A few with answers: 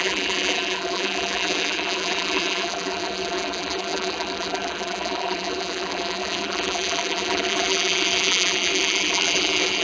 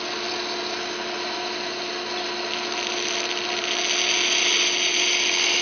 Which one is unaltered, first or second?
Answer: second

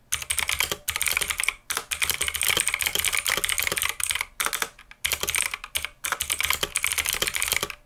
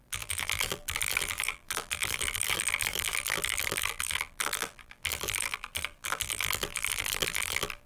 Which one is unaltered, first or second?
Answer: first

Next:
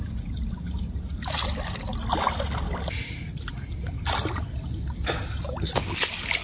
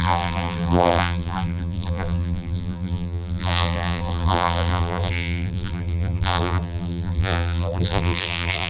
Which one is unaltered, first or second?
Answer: first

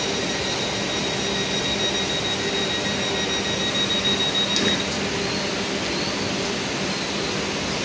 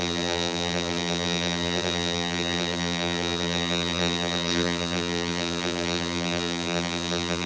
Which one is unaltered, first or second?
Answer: first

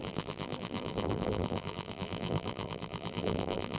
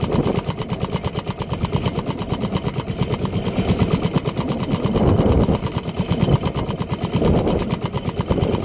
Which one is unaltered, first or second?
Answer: second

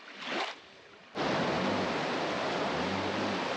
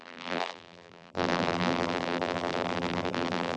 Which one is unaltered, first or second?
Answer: first